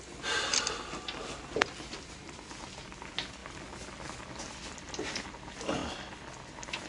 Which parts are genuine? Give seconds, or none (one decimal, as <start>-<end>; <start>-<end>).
0.0-1.6; 2.6-6.9